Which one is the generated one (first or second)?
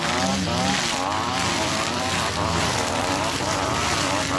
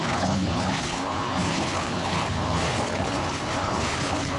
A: second